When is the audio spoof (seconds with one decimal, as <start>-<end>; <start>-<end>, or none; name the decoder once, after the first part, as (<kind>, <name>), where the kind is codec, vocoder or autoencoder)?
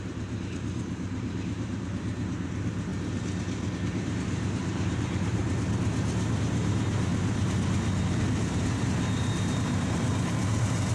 0.0-2.9 (vocoder, BigVGAN v2); 4.0-5.4; 6.6-7.1; 8.4-10.9